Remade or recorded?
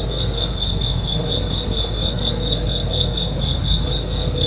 remade